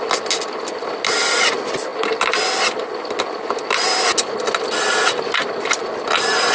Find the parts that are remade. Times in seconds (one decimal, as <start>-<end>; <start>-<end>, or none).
none